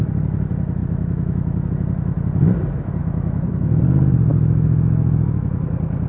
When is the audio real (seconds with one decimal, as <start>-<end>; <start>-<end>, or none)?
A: 0.0-0.8; 1.7-3.0; 3.8-4.3; 5.6-6.1